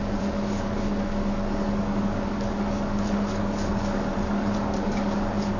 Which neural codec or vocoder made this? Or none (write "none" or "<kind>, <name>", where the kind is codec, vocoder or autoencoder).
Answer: codec, DAC